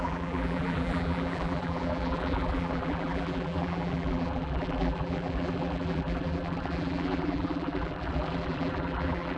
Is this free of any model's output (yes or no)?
no